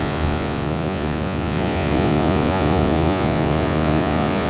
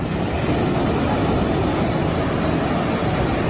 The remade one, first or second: first